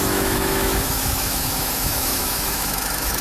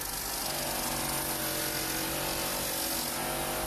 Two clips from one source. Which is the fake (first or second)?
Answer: first